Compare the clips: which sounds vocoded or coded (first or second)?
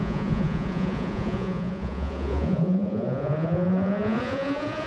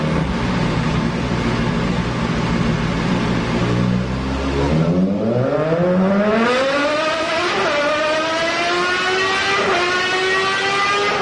first